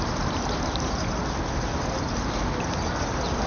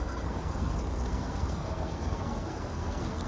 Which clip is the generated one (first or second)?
second